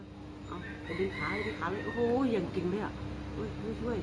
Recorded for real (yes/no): yes